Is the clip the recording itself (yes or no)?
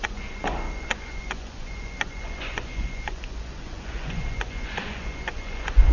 no